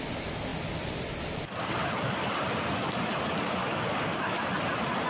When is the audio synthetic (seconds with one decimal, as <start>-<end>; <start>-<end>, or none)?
3.6-4.4